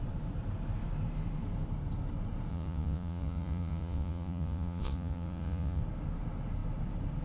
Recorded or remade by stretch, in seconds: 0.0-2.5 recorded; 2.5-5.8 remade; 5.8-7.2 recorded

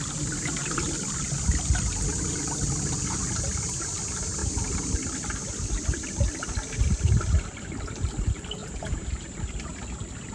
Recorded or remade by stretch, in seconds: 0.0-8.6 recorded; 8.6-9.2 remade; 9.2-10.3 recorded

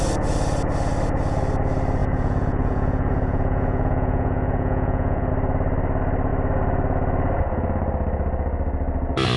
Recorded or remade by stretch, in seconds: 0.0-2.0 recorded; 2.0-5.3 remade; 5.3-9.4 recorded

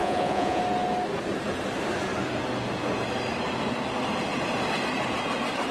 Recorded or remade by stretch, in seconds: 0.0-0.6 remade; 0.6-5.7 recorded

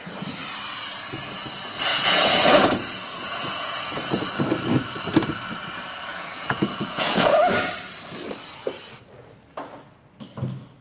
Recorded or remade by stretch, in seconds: 0.0-1.9 recorded; 1.9-4.3 remade; 4.3-6.1 recorded; 6.1-7.5 remade; 7.5-10.8 recorded

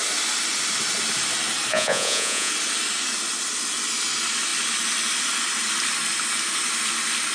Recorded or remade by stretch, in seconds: 0.0-1.7 recorded; 1.7-2.5 remade; 2.5-7.3 recorded